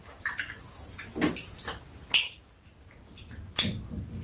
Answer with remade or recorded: recorded